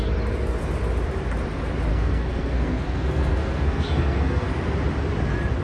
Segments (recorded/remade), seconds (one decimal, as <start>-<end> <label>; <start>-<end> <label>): 0.0-1.9 recorded; 1.9-4.5 remade; 4.5-5.6 recorded